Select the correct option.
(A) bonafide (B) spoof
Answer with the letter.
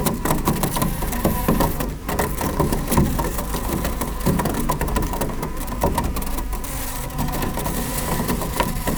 B